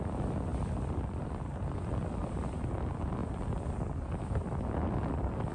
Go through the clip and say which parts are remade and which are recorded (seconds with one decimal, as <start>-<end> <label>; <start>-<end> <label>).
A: 0.0-0.5 recorded; 0.5-1.3 remade; 1.3-5.5 recorded